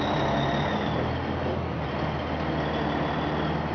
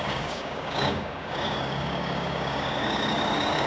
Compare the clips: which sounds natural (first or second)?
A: first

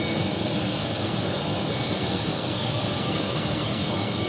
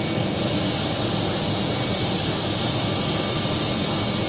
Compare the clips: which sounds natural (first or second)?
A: second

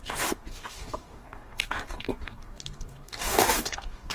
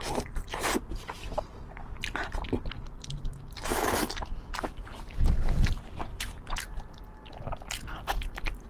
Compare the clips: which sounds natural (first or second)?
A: second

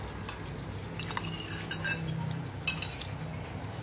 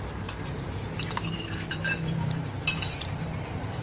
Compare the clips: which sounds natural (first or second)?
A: first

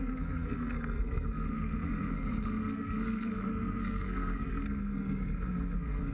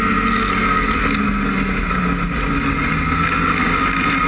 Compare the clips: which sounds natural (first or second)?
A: second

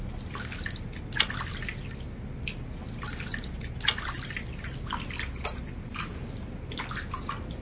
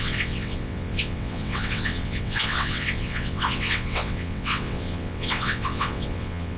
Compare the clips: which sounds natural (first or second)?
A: first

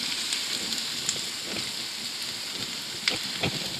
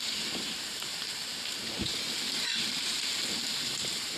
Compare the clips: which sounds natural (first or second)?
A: first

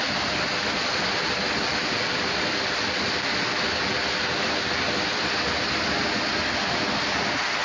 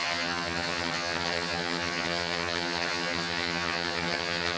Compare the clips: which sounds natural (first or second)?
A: first